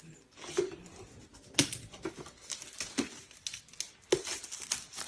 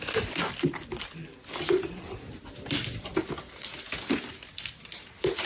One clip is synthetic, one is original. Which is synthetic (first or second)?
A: second